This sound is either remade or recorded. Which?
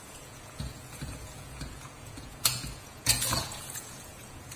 remade